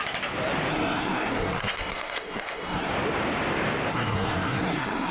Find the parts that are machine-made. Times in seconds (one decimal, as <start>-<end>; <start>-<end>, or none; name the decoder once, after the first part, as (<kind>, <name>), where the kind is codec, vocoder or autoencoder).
0.7-2.9 (codec, SNAC); 3.9-5.1